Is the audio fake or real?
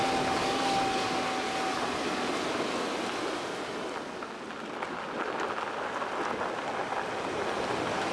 real